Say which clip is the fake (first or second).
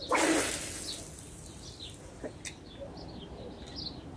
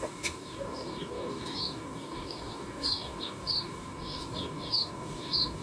second